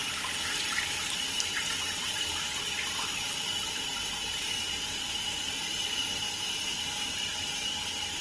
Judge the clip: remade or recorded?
remade